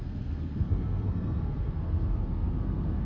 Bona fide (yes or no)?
no